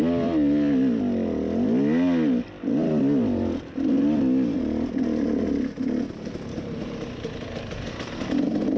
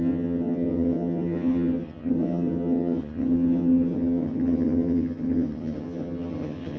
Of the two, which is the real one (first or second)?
first